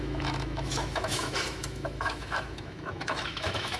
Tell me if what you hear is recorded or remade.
remade